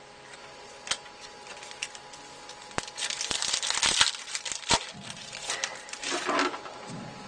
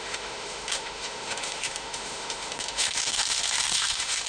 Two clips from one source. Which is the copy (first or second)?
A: second